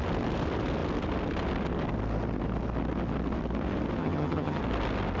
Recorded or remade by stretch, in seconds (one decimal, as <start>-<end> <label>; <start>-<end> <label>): 0.0-4.0 recorded; 4.0-4.6 remade; 4.6-5.2 recorded